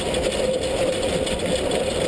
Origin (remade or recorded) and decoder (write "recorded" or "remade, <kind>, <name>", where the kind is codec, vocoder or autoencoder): recorded